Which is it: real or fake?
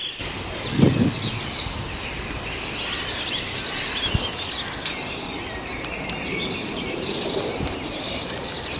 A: real